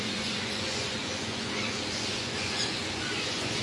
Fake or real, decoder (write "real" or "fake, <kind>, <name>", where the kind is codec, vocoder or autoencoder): fake, vocoder, Vocos